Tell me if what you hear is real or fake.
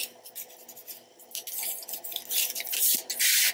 real